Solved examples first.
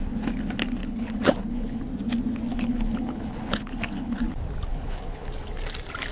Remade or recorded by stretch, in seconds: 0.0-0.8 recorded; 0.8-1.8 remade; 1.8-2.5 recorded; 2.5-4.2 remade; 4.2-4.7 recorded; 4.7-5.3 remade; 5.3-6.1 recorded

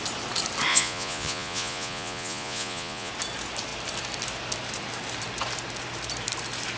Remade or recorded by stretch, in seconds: 0.0-0.7 recorded; 0.7-3.1 remade; 3.1-6.8 recorded

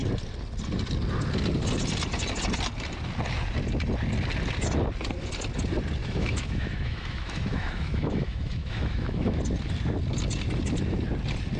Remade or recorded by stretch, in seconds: 0.0-6.0 recorded; 6.0-9.4 remade; 9.4-11.6 recorded

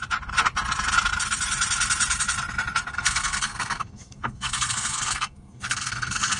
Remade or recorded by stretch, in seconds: 0.0-2.9 recorded; 2.9-6.4 remade

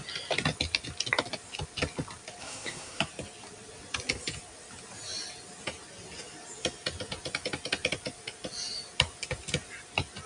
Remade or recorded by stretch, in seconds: 0.0-2.4 recorded; 2.4-3.0 remade; 3.0-10.3 recorded